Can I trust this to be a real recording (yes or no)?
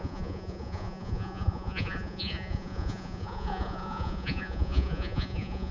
no